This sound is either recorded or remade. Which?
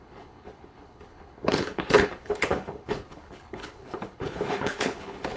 remade